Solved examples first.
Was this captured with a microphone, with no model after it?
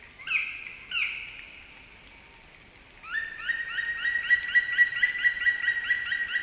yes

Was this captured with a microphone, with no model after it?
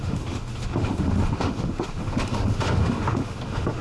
no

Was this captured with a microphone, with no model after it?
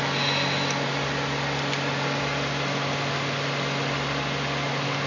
yes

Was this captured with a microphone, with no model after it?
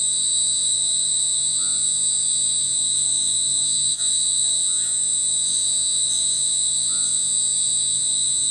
no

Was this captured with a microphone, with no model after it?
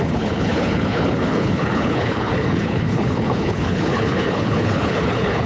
no